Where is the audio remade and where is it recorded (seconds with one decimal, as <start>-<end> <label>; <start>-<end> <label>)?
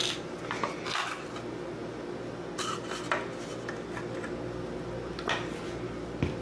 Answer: 0.0-6.4 recorded